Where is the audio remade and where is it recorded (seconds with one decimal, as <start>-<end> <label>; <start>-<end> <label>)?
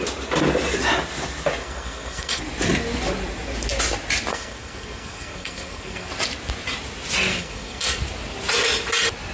0.0-1.6 recorded; 1.6-2.4 remade; 2.4-4.3 recorded; 4.3-6.1 remade; 6.1-7.3 recorded; 7.3-8.0 remade; 8.0-9.3 recorded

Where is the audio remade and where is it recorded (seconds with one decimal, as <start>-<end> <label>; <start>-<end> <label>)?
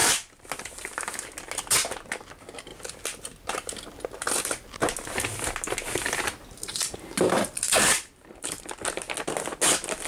0.0-10.1 recorded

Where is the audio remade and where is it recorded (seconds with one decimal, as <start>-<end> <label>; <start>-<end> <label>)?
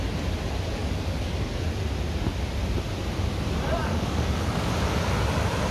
0.0-0.8 recorded; 0.8-1.6 remade; 1.6-3.8 recorded; 3.8-4.7 remade; 4.7-5.7 recorded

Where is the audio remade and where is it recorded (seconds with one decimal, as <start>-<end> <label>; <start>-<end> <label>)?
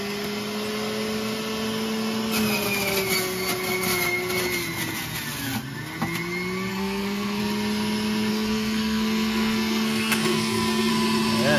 0.0-6.7 recorded; 6.7-7.4 remade; 7.4-8.3 recorded; 8.3-10.9 remade; 10.9-11.6 recorded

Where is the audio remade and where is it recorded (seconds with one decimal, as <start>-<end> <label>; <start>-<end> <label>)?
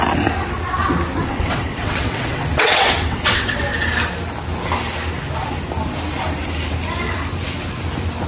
0.0-1.2 recorded; 1.2-3.6 remade; 3.6-8.3 recorded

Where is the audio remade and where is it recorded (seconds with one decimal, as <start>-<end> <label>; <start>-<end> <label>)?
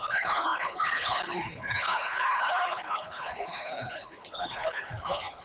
0.0-5.4 remade